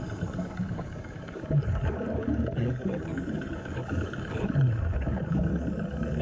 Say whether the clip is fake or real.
fake